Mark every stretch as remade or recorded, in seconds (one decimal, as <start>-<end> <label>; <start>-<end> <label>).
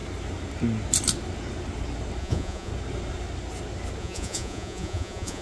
0.0-2.2 recorded; 2.2-2.7 remade; 2.7-4.0 recorded; 4.0-5.4 remade